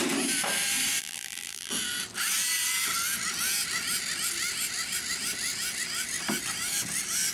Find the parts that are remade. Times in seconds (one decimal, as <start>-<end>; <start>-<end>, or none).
1.0-1.7